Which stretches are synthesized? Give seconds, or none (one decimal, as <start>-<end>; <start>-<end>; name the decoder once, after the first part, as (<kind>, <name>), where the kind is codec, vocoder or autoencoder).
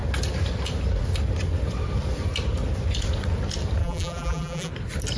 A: 3.8-4.7 (vocoder, BigVGAN v2)